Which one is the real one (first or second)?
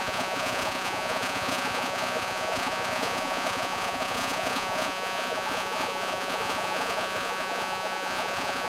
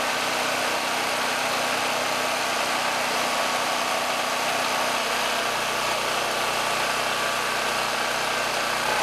second